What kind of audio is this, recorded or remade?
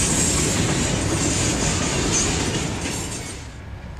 recorded